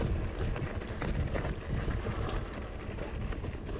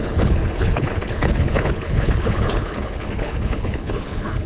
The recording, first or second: first